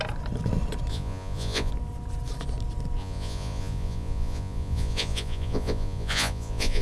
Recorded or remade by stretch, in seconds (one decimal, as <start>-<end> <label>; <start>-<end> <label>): 0.0-0.9 recorded; 0.9-1.7 remade; 1.7-3.0 recorded; 3.0-6.8 remade